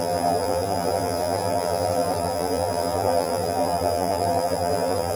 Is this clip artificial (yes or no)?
yes